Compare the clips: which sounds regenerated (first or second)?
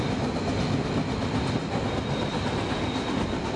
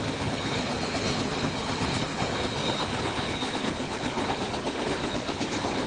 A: second